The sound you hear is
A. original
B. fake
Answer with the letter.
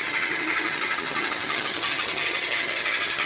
B